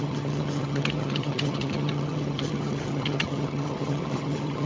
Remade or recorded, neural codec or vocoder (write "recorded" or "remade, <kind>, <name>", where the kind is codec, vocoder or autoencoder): remade, vocoder, HiFi-GAN